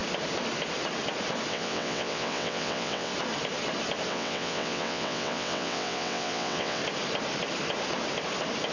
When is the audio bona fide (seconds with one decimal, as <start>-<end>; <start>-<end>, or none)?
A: 0.0-1.5; 3.1-4.1; 6.8-8.7